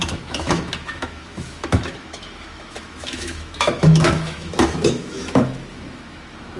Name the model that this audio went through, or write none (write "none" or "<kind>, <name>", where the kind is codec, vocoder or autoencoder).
autoencoder, DAC-VAE